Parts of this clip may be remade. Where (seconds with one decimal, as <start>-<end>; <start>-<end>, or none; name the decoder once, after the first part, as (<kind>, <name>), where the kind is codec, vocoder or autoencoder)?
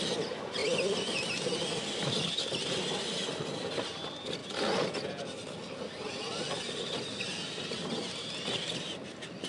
0.6-2.3 (vocoder, BigVGAN v2)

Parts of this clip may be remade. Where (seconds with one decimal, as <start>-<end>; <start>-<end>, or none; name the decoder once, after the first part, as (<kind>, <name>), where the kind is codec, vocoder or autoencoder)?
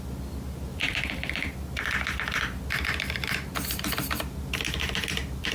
0.7-3.3 (vocoder, BigVGAN v2)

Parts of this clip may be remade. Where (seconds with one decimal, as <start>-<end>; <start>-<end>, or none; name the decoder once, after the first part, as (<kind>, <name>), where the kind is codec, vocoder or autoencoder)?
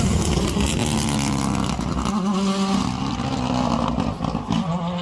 none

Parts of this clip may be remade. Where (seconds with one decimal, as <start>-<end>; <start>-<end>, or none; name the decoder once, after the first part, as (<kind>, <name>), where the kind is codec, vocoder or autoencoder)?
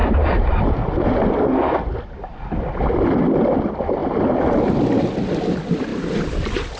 5.9-6.8 (vocoder, BigVGAN v2)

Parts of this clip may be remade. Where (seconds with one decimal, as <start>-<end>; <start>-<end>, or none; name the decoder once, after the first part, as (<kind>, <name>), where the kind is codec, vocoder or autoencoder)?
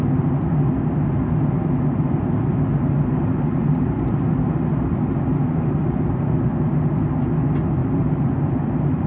3.6-4.2 (vocoder, BigVGAN v2); 7.8-8.5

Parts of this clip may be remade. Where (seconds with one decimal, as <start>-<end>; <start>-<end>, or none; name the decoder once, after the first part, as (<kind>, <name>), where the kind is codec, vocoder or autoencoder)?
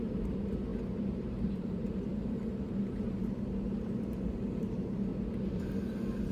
0.0-5.1 (vocoder, BigVGAN v2)